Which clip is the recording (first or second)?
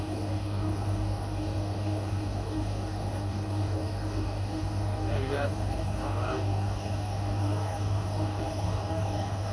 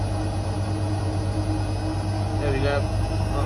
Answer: second